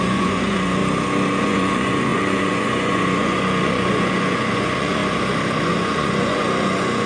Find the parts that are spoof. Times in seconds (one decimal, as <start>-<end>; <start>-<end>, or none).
0.0-0.8; 1.4-5.0; 5.6-7.1